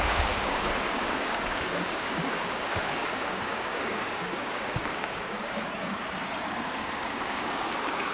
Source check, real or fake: fake